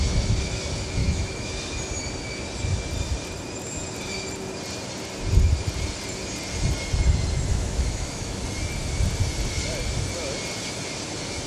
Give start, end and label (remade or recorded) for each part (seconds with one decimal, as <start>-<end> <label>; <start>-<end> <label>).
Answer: 0.0-1.0 recorded; 1.0-1.5 remade; 1.5-7.5 recorded; 7.5-8.4 remade; 8.4-11.5 recorded